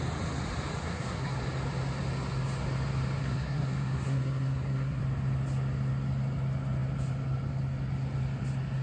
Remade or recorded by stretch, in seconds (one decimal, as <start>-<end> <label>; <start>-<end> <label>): 0.0-0.8 recorded; 0.8-1.4 remade; 1.4-3.2 recorded; 3.2-5.0 remade; 5.0-8.8 recorded

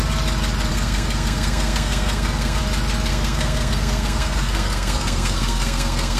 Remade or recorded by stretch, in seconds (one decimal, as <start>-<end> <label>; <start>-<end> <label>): 0.0-0.7 recorded; 0.7-2.6 remade; 2.6-3.1 recorded; 3.1-6.2 remade

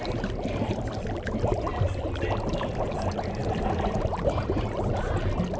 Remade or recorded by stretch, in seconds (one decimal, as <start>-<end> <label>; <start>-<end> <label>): 0.0-3.4 recorded; 3.4-4.9 remade; 4.9-5.6 recorded

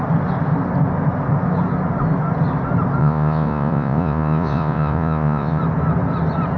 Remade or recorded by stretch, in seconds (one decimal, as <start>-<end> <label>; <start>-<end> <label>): 0.0-3.0 recorded; 3.0-5.6 remade; 5.6-6.6 recorded